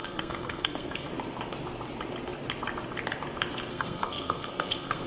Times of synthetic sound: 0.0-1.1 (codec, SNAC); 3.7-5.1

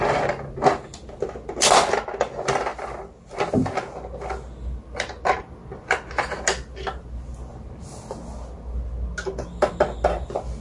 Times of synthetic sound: none

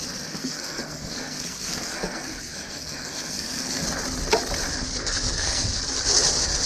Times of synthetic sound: 0.4-3.8 (codec, SNAC); 5.0-5.8

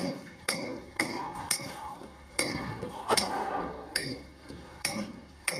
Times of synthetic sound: 0.0-5.6 (codec, SNAC)

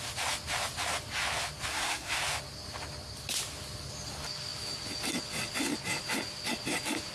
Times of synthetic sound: 1.7-2.2 (codec, SNAC)

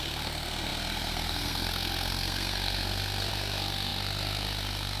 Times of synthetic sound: 0.0-5.0 (codec, SNAC)